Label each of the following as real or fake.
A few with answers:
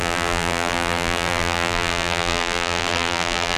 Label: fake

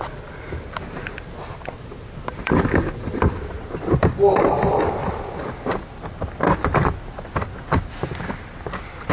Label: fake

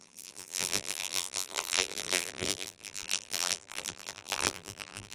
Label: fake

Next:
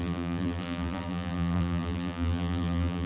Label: fake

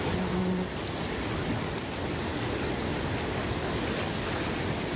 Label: real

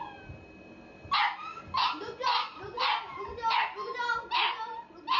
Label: real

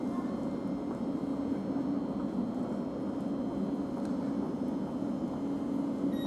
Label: real